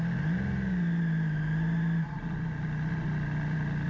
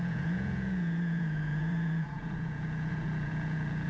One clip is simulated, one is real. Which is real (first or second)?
first